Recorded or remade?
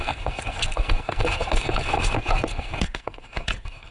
remade